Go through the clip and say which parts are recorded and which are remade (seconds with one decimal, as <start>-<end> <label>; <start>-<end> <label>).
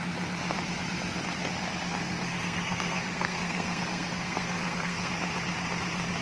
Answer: 0.0-2.0 recorded; 2.0-5.1 remade; 5.1-6.2 recorded